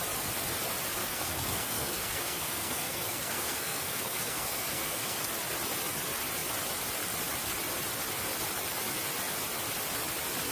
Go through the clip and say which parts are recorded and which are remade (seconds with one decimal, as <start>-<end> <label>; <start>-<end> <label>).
0.0-1.0 recorded; 1.0-5.3 remade; 5.3-10.5 recorded

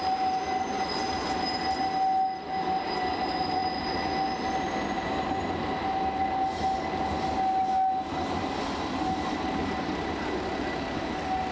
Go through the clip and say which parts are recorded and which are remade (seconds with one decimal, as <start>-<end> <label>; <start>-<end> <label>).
0.0-11.5 recorded